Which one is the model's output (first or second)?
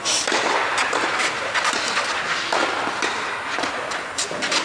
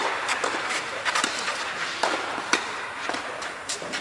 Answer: second